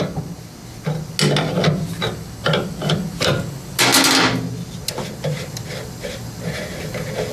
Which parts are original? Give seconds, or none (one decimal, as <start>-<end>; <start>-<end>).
0.0-7.3